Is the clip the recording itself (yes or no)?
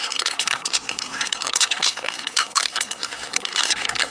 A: no